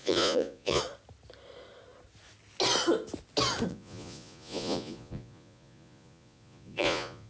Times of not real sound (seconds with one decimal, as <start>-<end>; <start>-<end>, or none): 0.0-0.8; 3.7-7.3